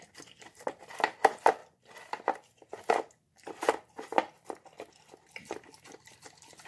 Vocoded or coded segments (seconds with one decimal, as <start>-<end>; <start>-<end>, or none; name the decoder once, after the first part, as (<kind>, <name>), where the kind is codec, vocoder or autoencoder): none